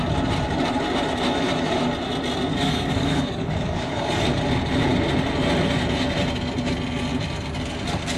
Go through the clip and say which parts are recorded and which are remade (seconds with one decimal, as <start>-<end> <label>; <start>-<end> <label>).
0.0-2.5 recorded; 2.5-4.3 remade; 4.3-8.2 recorded